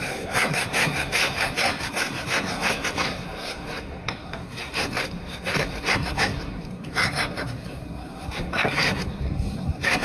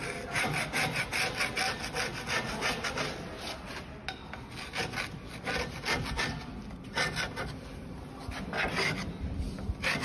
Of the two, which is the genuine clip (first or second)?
second